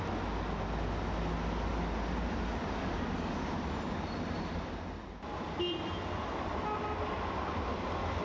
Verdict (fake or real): real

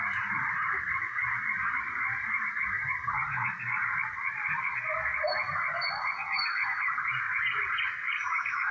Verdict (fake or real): fake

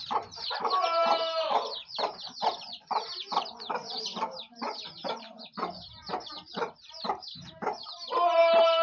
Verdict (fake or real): fake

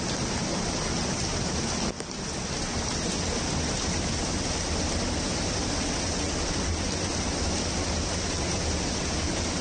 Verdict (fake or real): real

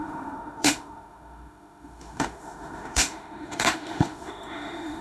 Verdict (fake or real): fake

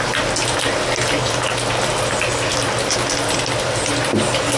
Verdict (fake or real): real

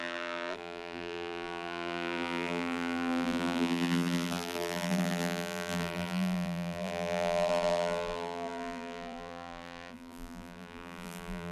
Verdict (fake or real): fake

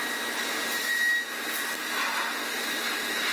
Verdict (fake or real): real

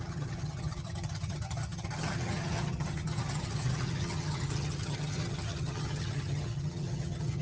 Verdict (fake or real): fake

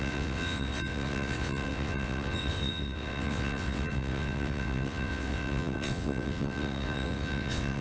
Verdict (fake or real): fake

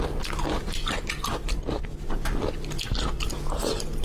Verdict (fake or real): real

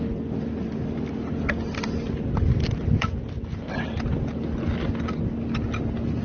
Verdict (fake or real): real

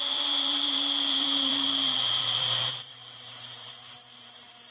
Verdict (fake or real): fake